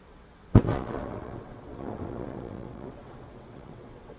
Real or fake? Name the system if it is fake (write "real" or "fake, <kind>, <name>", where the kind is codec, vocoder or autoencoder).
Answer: fake, vocoder, WaveNeXt